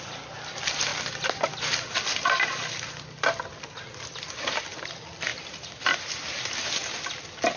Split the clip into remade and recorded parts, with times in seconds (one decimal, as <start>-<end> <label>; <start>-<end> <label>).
0.0-7.6 recorded